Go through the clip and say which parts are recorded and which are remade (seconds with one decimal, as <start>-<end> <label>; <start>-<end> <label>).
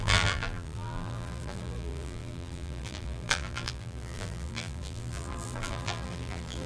0.0-6.7 remade